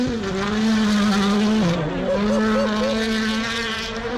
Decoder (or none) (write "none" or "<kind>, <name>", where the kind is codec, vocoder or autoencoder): none